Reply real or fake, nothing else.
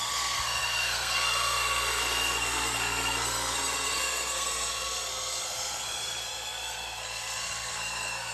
fake